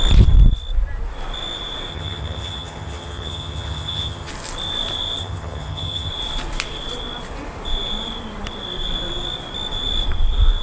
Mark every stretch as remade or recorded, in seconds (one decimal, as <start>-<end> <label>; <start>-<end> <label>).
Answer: 0.0-1.9 recorded; 1.9-4.3 remade; 4.3-5.2 recorded; 5.2-6.1 remade; 6.1-10.6 recorded